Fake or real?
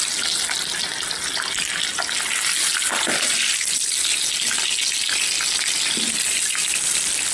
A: real